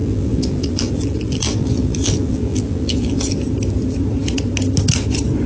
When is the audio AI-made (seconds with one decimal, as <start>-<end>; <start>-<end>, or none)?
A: 0.0-3.3